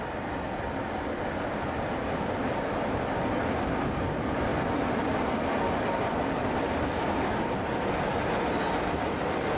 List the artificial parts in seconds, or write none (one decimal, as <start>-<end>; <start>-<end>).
none